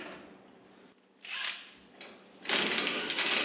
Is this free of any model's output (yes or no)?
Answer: yes